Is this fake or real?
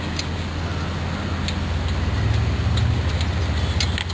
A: real